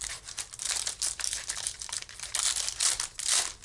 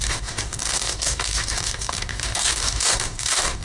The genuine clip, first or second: first